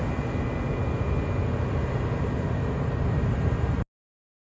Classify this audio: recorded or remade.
recorded